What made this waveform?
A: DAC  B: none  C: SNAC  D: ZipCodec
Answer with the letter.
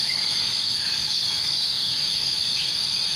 A